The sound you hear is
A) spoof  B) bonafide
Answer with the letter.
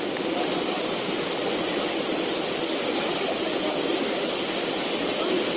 B